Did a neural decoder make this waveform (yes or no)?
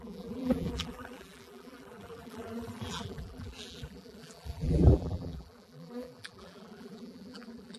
yes